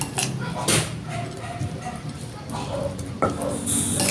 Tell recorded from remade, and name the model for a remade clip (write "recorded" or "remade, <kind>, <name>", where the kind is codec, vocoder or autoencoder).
recorded